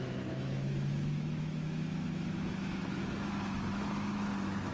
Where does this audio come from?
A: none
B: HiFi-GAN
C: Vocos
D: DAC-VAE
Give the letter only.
D